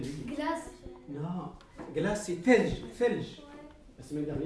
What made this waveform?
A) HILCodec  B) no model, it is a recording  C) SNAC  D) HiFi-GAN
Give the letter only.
B